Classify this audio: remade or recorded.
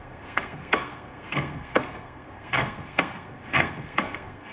remade